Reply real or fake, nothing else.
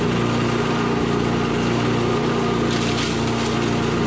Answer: real